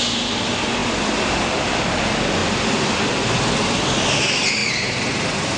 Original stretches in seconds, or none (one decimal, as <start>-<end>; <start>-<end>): 0.0-4.6